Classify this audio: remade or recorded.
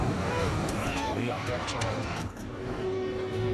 remade